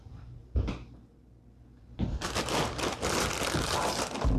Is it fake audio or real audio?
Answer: real